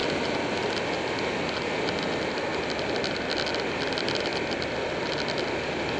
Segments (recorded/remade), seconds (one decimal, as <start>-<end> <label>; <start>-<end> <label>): 0.0-6.0 recorded